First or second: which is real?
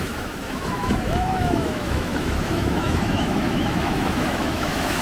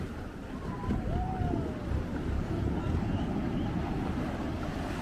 second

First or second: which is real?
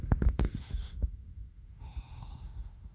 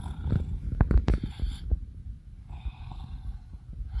second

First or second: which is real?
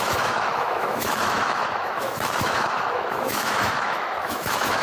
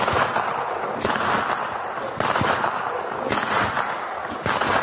second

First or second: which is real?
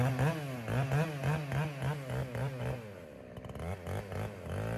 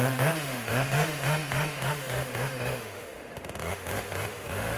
first